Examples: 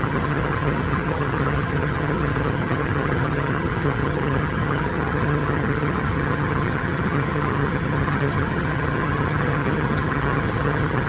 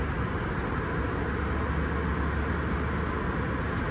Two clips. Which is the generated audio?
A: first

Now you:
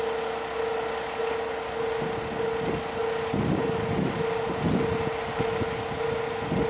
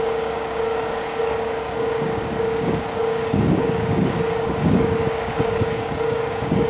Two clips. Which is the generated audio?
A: second